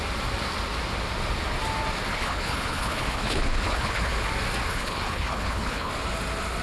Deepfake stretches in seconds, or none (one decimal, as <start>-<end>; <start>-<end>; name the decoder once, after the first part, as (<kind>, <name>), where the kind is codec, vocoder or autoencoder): 2.1-4.1 (codec, HILCodec); 4.7-5.9